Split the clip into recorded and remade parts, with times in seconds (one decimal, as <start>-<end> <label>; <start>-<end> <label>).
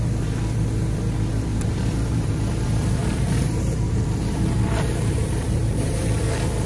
0.0-1.5 recorded; 1.5-2.3 remade; 2.3-3.0 recorded; 3.0-6.2 remade; 6.2-6.7 recorded